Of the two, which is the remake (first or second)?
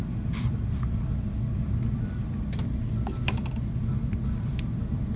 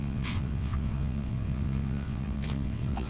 second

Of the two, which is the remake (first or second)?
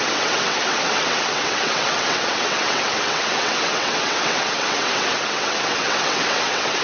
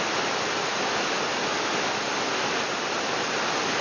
first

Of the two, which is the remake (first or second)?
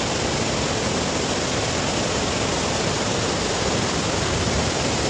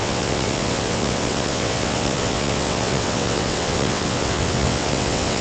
second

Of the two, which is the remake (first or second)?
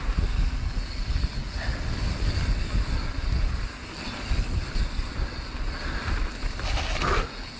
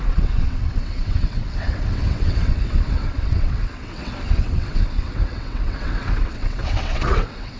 second